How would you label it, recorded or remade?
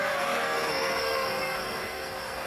remade